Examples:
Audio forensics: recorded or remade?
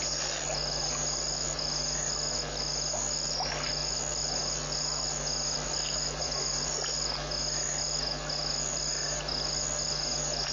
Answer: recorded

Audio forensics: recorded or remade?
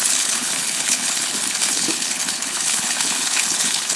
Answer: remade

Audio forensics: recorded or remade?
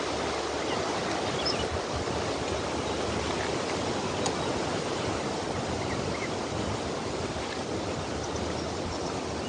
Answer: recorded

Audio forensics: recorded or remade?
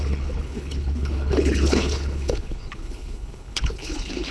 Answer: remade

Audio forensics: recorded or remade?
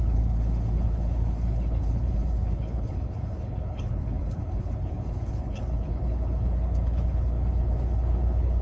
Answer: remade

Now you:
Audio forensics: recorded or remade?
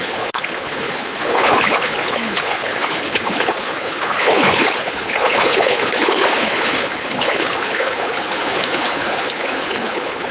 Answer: remade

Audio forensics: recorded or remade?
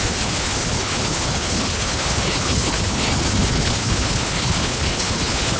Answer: remade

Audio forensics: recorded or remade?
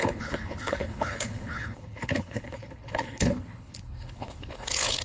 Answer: remade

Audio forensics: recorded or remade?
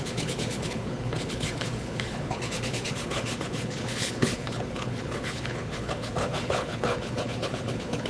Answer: remade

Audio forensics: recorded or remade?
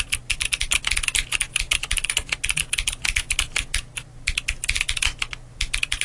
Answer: recorded